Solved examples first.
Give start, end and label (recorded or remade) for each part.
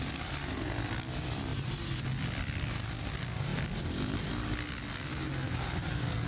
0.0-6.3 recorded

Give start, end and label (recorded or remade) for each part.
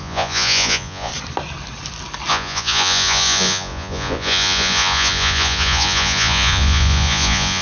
0.0-1.1 remade; 1.1-2.3 recorded; 2.3-7.6 remade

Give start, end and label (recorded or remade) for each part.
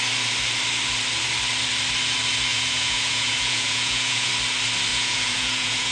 0.0-2.5 recorded; 2.5-4.3 remade; 4.3-4.9 recorded; 4.9-5.9 remade